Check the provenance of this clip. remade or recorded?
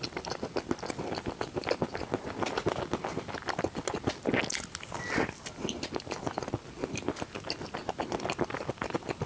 recorded